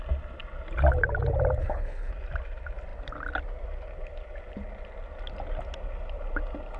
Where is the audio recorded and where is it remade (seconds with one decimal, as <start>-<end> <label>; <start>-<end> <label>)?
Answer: 0.0-1.6 recorded; 1.6-2.1 remade; 2.1-6.8 recorded